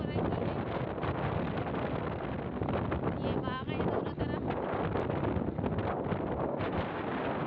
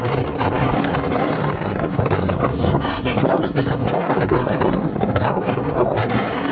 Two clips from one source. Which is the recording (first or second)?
first